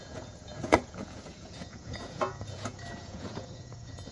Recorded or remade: remade